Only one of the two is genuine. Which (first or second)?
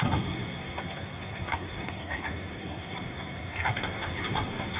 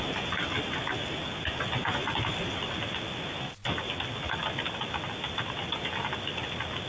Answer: second